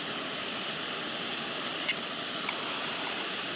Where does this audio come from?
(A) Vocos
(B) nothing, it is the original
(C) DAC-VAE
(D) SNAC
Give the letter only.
B